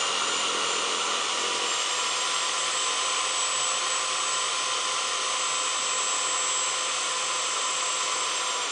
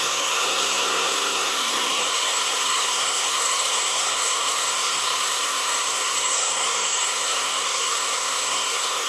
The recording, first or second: first